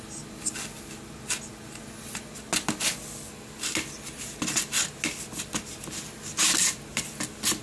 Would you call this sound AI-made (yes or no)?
no